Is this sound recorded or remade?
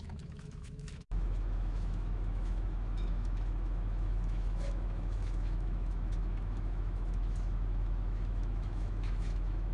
remade